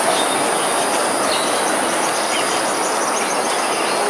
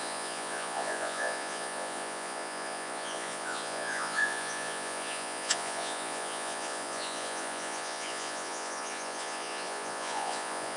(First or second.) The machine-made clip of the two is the second